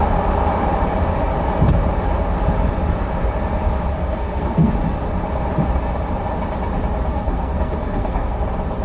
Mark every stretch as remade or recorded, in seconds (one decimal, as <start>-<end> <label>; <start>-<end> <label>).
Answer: 0.0-3.9 recorded; 3.9-4.7 remade; 4.7-7.1 recorded; 7.1-8.4 remade; 8.4-8.8 recorded